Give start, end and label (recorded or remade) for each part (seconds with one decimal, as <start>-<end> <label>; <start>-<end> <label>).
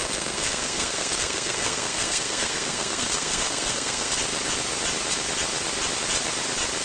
0.0-4.1 remade; 4.1-6.8 recorded